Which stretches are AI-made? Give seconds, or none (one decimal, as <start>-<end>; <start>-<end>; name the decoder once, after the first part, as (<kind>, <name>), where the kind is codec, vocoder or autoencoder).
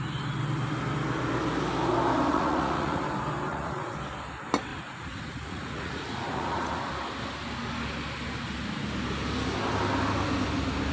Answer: 2.3-3.0 (vocoder, Vocos); 3.5-4.0; 4.7-6.8